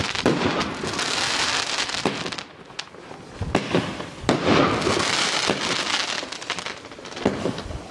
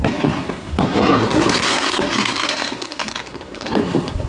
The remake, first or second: second